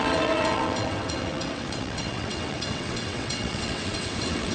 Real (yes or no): no